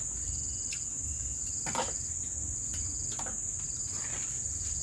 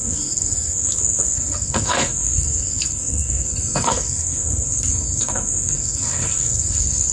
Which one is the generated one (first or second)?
second